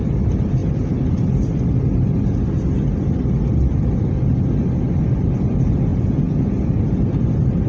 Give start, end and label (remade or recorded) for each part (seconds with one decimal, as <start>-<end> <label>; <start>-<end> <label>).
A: 0.0-5.9 recorded; 5.9-6.7 remade; 6.7-7.7 recorded